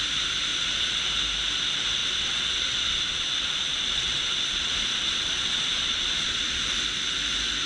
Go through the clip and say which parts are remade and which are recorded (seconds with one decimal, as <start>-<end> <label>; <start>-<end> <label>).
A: 0.0-0.5 recorded; 0.5-1.0 remade; 1.0-2.0 recorded; 2.0-6.6 remade; 6.6-7.7 recorded